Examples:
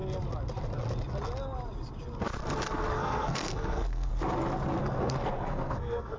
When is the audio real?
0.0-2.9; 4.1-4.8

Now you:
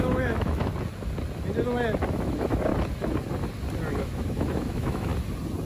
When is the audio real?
0.7-2.1; 2.7-3.9; 5.1-5.7